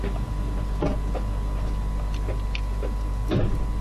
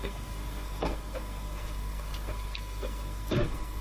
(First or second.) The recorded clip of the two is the first